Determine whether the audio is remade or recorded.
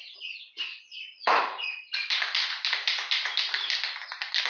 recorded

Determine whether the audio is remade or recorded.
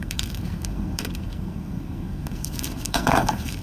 remade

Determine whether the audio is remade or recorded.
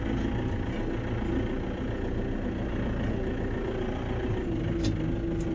recorded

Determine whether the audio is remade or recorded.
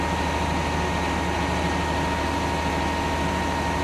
recorded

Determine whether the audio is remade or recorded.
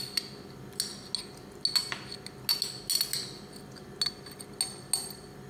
recorded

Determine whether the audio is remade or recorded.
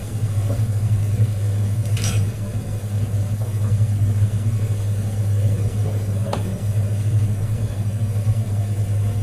remade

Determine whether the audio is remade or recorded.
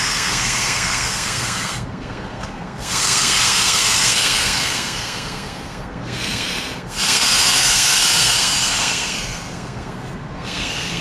remade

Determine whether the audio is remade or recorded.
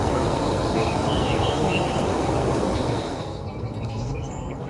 remade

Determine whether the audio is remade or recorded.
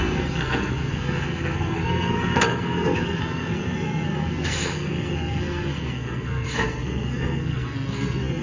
remade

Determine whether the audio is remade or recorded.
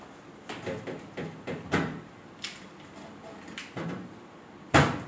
recorded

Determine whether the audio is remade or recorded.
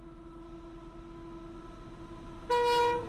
recorded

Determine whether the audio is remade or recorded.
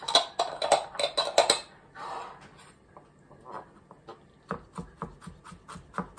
recorded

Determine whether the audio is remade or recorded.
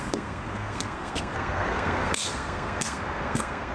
remade